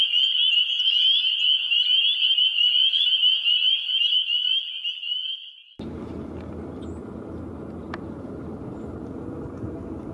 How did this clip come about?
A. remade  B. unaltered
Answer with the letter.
B